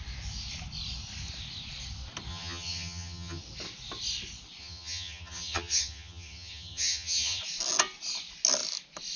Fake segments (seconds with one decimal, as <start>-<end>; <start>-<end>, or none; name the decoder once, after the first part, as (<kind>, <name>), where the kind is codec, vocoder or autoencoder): 2.3-3.4 (vocoder, HiFi-GAN); 4.6-7.4